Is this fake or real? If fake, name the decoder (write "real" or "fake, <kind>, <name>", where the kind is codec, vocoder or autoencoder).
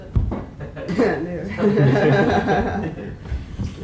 real